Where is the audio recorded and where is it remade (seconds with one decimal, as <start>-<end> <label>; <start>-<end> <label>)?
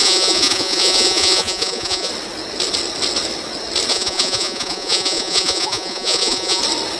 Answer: 0.0-2.1 remade; 2.1-3.9 recorded; 3.9-6.6 remade; 6.6-7.0 recorded